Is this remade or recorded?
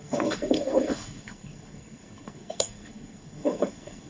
remade